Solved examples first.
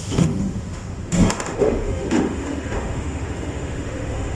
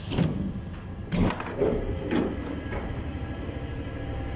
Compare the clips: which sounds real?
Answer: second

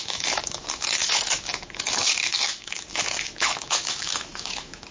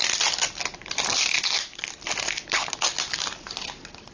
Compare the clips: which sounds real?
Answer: second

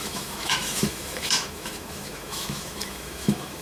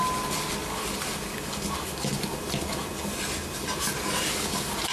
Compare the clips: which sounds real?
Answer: second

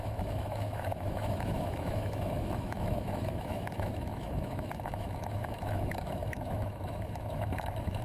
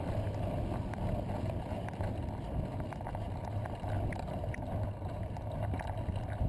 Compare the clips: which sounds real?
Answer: second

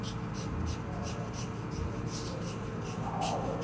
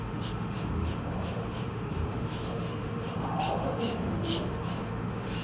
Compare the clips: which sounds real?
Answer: first